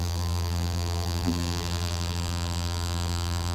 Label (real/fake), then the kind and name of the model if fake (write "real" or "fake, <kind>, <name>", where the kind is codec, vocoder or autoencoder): fake, vocoder, BigVGAN v2